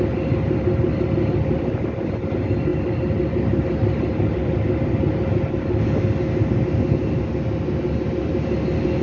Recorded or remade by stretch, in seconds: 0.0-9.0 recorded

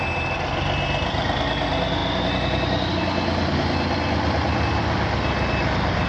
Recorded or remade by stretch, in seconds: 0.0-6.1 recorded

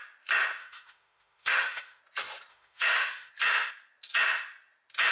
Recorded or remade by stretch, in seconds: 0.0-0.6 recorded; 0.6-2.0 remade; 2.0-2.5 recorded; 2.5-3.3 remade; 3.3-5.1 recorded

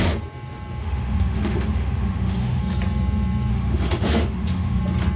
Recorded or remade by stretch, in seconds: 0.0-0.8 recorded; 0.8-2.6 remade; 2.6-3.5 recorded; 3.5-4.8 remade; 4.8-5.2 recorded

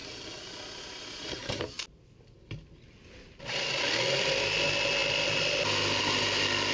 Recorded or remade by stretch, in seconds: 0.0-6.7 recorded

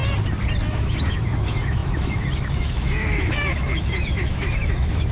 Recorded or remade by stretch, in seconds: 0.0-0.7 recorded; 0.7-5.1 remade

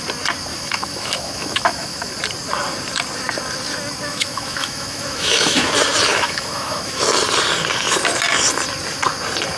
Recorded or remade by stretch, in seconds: 0.0-0.5 recorded; 0.5-2.1 remade; 2.1-4.1 recorded; 4.1-5.6 remade; 5.6-6.1 recorded; 6.1-7.0 remade; 7.0-9.6 recorded

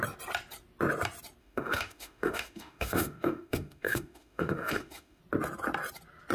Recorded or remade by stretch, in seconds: 0.0-1.4 recorded; 1.4-5.2 remade; 5.2-6.3 recorded